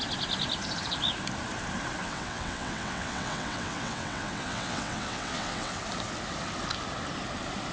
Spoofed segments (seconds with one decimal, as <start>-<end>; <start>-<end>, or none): 2.0-5.8